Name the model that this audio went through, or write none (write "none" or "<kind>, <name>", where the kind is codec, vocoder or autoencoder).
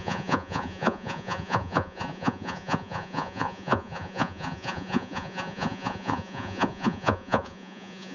vocoder, Vocos